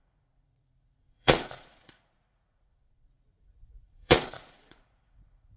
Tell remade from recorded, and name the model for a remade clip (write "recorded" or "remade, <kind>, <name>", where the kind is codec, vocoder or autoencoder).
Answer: remade, vocoder, Vocos